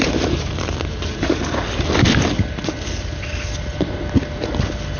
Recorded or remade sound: recorded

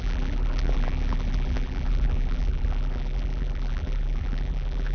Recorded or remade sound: remade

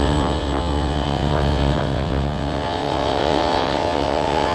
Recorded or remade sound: remade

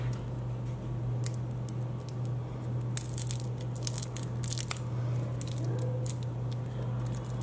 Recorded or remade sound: recorded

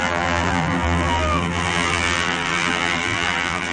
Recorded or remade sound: remade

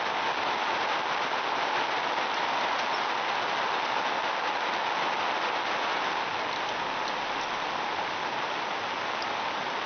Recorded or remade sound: recorded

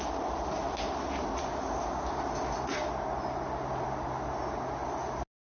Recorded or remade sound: recorded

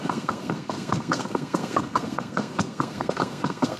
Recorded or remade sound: remade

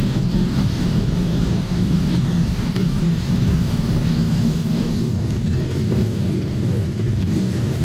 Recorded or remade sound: remade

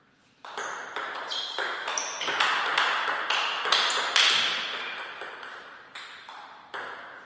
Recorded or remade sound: recorded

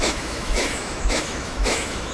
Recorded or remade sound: remade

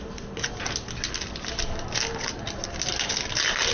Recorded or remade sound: recorded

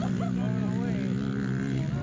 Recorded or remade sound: recorded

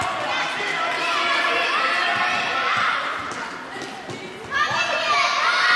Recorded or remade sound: recorded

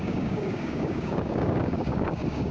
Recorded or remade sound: remade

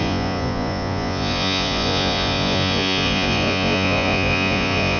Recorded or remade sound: remade